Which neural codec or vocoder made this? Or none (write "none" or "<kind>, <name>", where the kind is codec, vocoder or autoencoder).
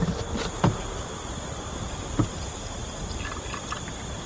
none